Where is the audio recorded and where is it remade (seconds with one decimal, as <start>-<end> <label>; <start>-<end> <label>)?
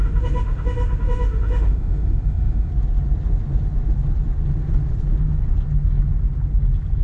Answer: 0.0-2.7 remade; 2.7-7.0 recorded